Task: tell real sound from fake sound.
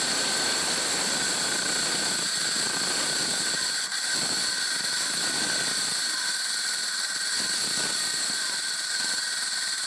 real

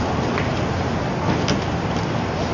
real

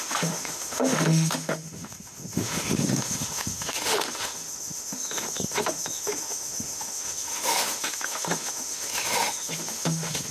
fake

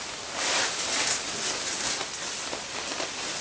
real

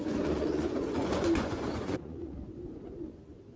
fake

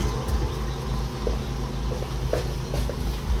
real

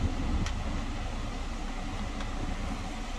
real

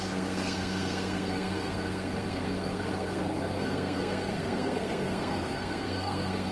fake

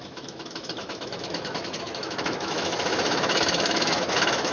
fake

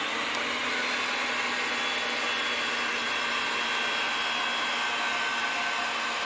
real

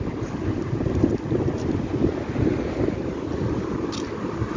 real